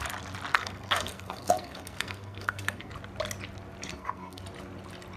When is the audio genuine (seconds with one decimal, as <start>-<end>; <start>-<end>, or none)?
0.0-0.5; 2.9-3.9; 4.4-5.2